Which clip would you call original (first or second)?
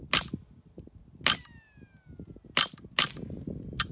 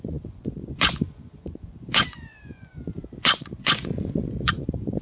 first